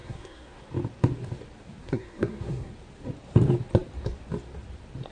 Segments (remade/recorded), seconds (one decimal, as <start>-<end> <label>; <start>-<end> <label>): 0.0-0.6 remade; 0.6-1.8 recorded; 1.8-2.7 remade; 2.7-5.1 recorded